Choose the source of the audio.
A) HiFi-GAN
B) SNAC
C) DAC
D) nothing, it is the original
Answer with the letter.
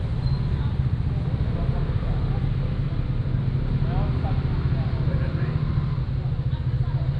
D